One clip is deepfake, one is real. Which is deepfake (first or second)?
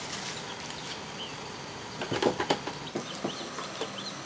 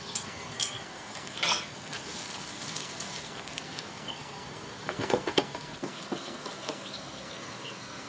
second